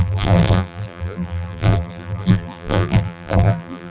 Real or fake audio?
fake